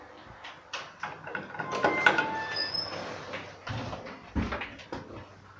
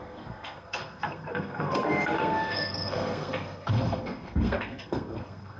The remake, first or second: second